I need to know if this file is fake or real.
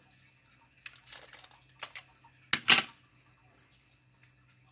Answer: real